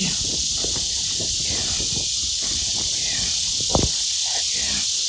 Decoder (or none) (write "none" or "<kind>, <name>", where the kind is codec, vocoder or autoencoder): none